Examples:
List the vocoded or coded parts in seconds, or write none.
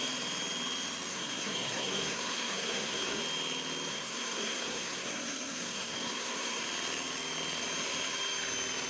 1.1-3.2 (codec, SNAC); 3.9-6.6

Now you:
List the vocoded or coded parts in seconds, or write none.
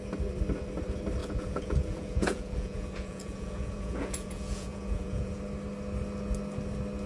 1.2-5.4 (vocoder, Vocos)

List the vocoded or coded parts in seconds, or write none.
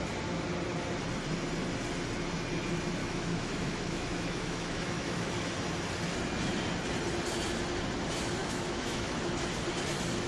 3.0-5.3 (autoencoder, DAC-VAE); 8.4-9.3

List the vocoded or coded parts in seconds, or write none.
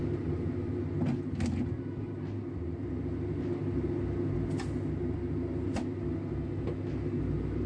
none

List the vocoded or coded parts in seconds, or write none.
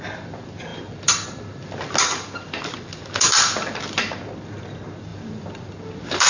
0.7-4.2 (vocoder, BigVGAN v2); 5.1-6.3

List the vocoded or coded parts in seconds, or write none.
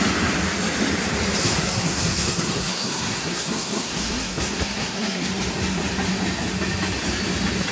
1.4-5.3 (codec, SNAC)